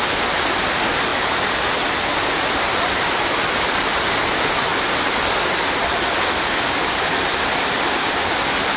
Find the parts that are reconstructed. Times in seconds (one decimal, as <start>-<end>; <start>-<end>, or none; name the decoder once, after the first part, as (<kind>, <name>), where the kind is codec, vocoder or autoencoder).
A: none